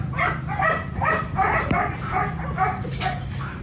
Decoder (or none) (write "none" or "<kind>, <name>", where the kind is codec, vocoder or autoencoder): none